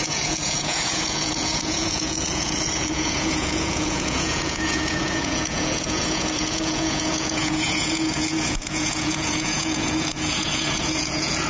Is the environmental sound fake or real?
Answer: fake